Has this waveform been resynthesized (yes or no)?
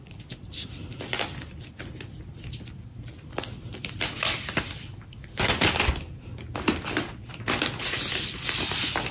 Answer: no